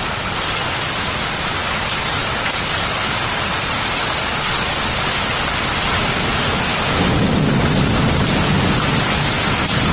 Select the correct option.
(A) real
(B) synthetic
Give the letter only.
A